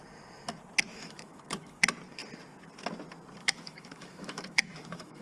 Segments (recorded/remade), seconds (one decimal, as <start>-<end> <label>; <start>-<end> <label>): 0.0-0.9 recorded; 0.9-1.8 remade; 1.8-3.4 recorded; 3.4-5.2 remade

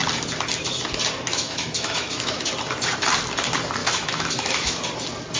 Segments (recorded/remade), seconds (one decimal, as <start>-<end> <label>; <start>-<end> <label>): 0.0-1.3 recorded; 1.3-2.5 remade; 2.5-3.8 recorded; 3.8-4.8 remade; 4.8-5.4 recorded

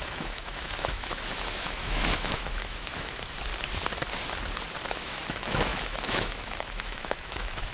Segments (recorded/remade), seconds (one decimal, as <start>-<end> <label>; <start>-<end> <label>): 0.0-3.5 remade; 3.5-4.9 recorded; 4.9-7.7 remade

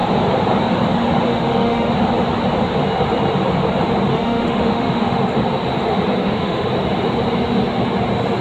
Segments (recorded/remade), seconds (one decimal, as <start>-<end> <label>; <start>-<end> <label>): 0.0-1.3 recorded; 1.3-1.9 remade; 1.9-4.1 recorded; 4.1-5.2 remade; 5.2-6.2 recorded; 6.2-6.7 remade; 6.7-8.4 recorded

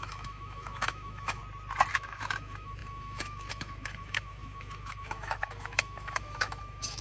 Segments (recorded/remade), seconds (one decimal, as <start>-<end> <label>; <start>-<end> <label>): 0.0-1.4 remade; 1.4-1.9 recorded; 1.9-7.0 remade

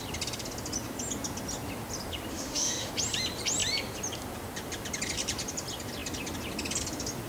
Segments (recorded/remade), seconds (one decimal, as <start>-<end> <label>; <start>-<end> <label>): 0.0-2.3 recorded; 2.3-2.9 remade; 2.9-7.3 recorded

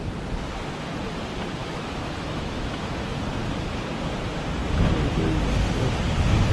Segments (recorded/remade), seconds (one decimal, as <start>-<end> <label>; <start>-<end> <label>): 0.0-1.6 recorded; 1.6-3.2 remade; 3.2-6.5 recorded

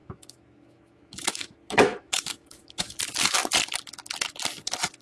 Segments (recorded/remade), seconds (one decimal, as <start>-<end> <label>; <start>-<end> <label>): 0.0-3.0 remade; 3.0-5.0 recorded